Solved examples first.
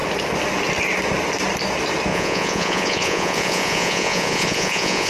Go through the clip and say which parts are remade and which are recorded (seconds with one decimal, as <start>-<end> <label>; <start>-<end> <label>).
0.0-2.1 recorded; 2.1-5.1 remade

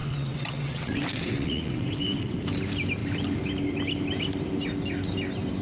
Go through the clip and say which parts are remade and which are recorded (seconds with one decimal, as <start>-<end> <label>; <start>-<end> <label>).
0.0-2.4 remade; 2.4-5.6 recorded

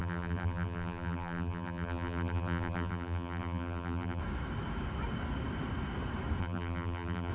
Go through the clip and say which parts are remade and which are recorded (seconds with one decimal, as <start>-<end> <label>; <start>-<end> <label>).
0.0-4.2 remade; 4.2-6.4 recorded; 6.4-7.3 remade

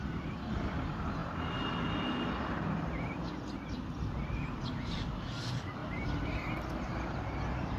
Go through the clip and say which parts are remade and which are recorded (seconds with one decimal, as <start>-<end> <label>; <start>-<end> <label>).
0.0-1.2 remade; 1.2-2.4 recorded; 2.4-5.8 remade; 5.8-7.8 recorded